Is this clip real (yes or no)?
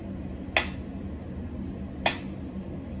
yes